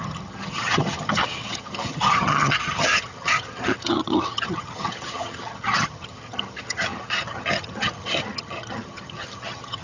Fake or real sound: fake